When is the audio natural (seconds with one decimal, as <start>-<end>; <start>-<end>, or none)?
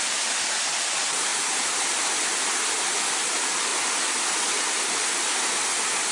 0.0-1.3; 2.1-6.1